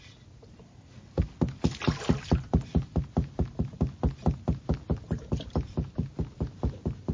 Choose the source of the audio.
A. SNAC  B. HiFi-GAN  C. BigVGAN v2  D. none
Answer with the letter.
D